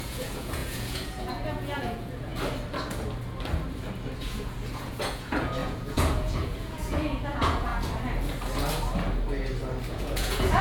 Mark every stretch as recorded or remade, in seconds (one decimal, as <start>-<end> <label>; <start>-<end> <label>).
0.0-2.3 remade; 2.3-4.2 recorded; 4.2-7.7 remade; 7.7-9.9 recorded; 9.9-10.6 remade